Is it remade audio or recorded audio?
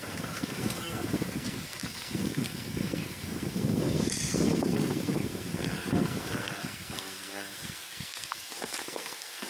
remade